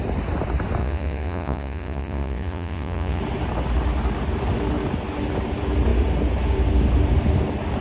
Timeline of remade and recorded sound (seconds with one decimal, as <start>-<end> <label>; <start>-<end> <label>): 0.0-0.8 recorded; 0.8-3.2 remade; 3.2-7.8 recorded